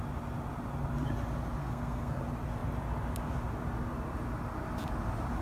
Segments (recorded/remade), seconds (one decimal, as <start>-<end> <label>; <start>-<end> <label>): 0.0-1.6 recorded; 1.6-2.2 remade; 2.2-5.4 recorded